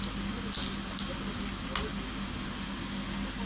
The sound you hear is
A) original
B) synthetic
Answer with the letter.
A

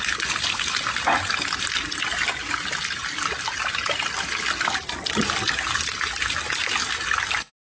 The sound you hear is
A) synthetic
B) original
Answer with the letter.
B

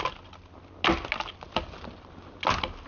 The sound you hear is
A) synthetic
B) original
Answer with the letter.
B